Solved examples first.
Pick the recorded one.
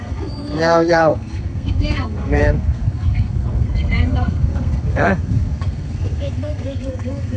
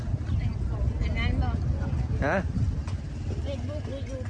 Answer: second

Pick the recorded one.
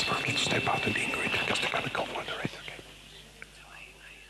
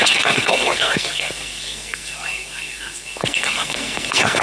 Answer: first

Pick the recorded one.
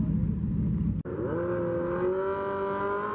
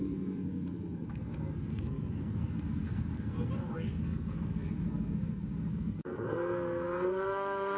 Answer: first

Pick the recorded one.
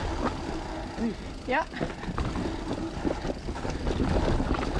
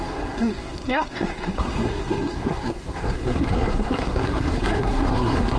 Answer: first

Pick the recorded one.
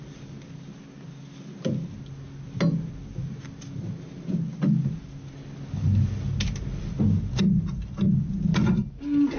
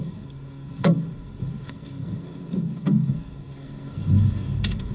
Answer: first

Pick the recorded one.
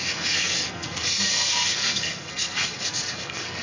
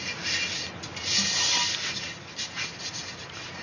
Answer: second